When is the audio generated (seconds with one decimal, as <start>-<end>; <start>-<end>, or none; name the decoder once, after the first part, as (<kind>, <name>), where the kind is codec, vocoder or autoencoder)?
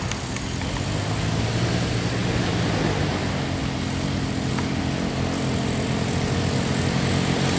none